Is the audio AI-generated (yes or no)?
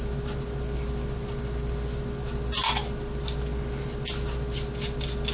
no